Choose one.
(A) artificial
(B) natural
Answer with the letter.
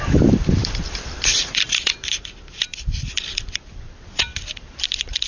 A